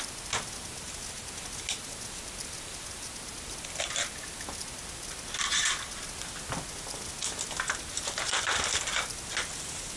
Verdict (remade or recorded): recorded